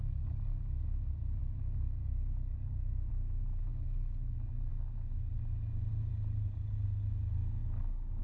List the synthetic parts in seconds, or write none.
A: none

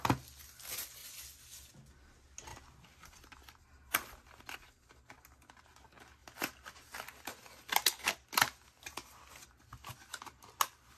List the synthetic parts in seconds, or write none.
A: none